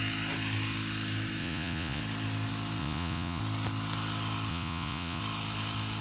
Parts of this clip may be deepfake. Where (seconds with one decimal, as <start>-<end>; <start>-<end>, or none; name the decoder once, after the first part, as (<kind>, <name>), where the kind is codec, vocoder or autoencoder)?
1.4-2.0 (vocoder, Vocos); 2.8-3.4; 4.5-5.2